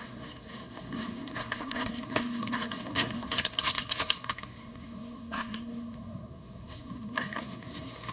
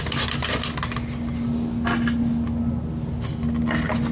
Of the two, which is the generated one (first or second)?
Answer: first